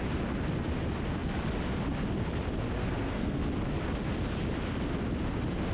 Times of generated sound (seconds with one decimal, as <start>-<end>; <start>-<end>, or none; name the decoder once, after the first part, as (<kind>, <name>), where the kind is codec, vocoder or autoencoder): 2.8-3.4 (codec, SNAC)